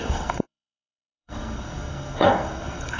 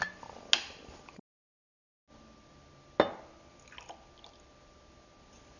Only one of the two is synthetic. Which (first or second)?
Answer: first